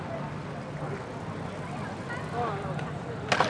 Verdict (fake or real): real